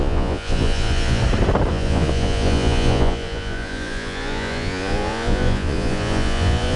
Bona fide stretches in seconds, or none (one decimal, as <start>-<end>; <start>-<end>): 1.2-1.7